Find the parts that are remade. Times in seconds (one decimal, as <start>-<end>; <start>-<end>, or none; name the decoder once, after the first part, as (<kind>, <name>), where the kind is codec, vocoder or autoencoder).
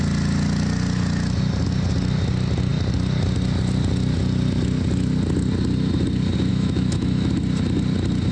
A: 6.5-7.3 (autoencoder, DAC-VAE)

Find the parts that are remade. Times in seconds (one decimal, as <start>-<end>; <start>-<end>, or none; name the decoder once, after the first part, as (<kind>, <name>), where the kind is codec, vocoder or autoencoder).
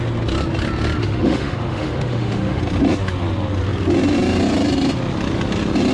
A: 1.0-2.6 (autoencoder, DAC-VAE)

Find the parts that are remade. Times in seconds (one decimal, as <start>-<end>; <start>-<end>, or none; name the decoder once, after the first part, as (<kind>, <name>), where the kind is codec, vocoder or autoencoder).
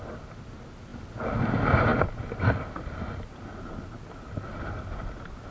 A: none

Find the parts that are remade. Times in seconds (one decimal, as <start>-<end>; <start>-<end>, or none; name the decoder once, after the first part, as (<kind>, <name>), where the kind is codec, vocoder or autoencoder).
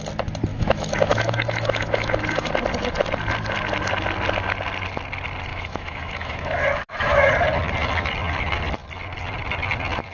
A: 0.5-2.5 (autoencoder, DAC-VAE); 5.5-7.3